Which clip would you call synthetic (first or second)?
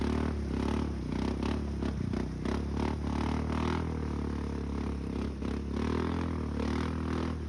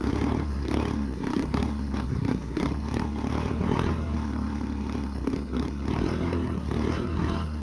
second